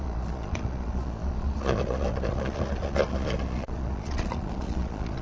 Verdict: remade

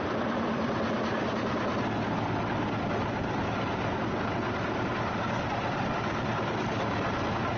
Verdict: recorded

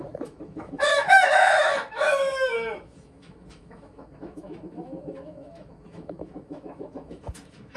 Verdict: remade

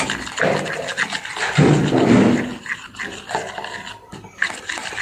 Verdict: recorded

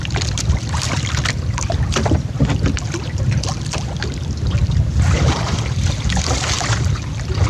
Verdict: recorded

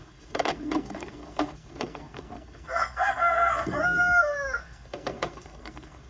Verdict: remade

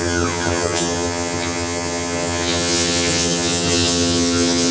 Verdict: remade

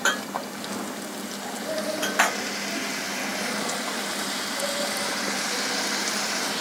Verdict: recorded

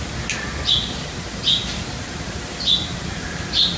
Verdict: recorded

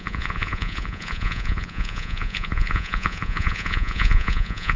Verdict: remade